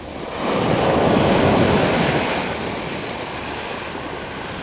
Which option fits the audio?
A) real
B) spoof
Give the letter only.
A